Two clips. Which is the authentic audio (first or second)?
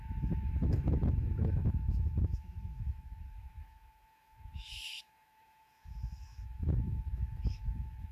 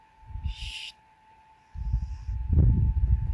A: second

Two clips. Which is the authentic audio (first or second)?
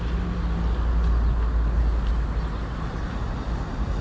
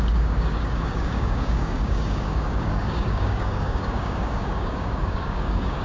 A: first